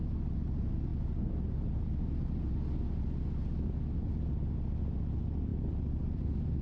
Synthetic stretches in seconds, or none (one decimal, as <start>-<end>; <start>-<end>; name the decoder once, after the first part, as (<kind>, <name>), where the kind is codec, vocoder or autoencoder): 5.5-6.6 (vocoder, BigVGAN v2)